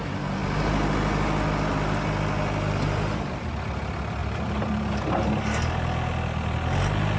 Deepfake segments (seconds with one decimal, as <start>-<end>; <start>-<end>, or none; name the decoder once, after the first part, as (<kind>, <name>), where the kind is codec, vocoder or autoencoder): 4.2-4.9 (vocoder, BigVGAN v2)